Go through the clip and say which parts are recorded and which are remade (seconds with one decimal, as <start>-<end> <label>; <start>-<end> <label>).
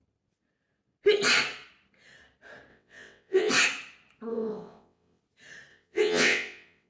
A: 0.0-2.7 recorded; 2.7-3.5 remade; 3.5-4.3 recorded; 4.3-5.2 remade; 5.2-5.7 recorded; 5.7-6.9 remade